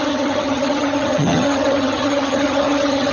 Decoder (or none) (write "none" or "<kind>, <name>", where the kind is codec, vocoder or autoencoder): vocoder, HiFi-GAN